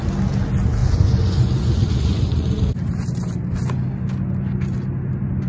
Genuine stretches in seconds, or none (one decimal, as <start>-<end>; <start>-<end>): 0.0-0.8; 2.6-5.5